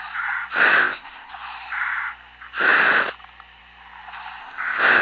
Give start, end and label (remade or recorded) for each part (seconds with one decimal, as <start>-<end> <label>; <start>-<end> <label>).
0.0-0.8 recorded; 0.8-1.3 remade; 1.3-4.4 recorded; 4.4-5.0 remade